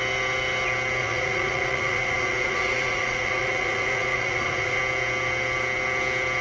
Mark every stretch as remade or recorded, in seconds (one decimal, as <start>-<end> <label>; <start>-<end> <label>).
0.0-1.0 recorded; 1.0-4.8 remade; 4.8-6.4 recorded